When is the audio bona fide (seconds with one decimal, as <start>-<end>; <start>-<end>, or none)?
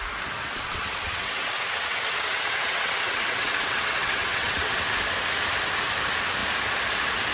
0.0-0.4; 4.8-7.3